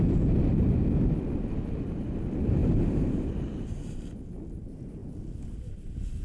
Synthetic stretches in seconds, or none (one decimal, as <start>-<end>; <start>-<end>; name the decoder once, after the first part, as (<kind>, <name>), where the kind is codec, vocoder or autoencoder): 2.6-3.4 (vocoder, BigVGAN v2)